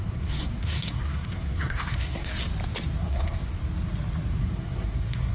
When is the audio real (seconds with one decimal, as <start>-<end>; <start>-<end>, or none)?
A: 2.3-3.0; 3.6-4.4